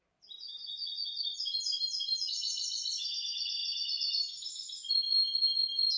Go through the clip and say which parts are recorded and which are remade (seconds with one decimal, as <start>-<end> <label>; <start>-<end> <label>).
0.0-6.0 recorded